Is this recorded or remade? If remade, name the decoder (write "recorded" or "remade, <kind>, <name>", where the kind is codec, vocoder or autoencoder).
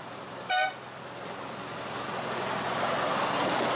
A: recorded